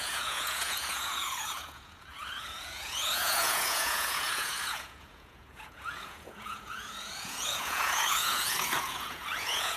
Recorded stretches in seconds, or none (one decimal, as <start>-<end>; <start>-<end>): none